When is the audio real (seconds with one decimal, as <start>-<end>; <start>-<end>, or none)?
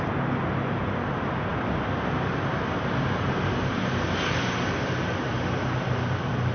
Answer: 0.0-6.5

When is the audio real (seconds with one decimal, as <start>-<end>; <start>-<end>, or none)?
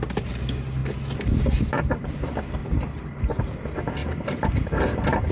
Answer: 0.0-2.6; 3.4-4.0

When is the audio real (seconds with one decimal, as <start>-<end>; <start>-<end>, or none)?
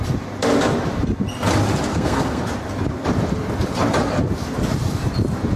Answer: 0.0-1.9; 2.4-5.6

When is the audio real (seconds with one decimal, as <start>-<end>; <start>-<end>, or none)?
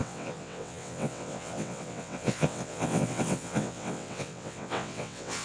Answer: none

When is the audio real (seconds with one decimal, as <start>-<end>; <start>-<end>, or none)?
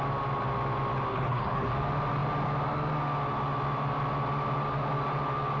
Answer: 0.0-1.1; 1.7-5.6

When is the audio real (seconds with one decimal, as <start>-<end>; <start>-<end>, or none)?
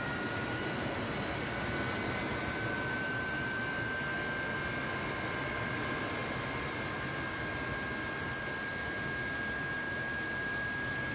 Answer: 0.0-11.1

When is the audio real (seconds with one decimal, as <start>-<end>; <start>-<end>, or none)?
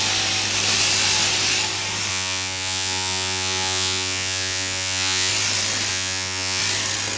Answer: 0.0-2.1; 5.3-5.9; 6.6-7.2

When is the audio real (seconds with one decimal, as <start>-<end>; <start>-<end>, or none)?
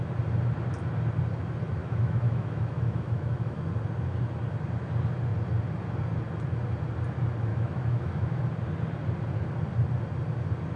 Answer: 0.0-1.8; 3.7-7.5; 8.4-10.8